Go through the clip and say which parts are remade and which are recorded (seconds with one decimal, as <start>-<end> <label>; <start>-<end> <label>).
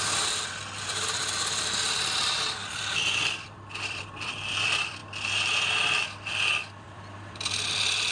0.0-1.2 remade; 1.2-1.9 recorded; 1.9-5.0 remade; 5.0-6.0 recorded; 6.0-8.1 remade